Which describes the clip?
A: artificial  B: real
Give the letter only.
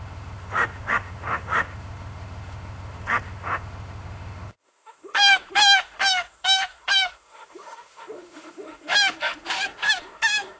A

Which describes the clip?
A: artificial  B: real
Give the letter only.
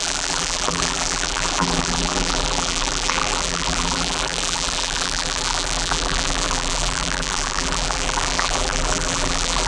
A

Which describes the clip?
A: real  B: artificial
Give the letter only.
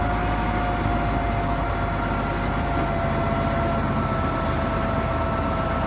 A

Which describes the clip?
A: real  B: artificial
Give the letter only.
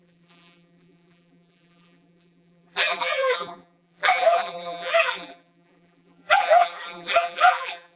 B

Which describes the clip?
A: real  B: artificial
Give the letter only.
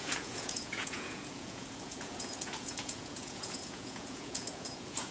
B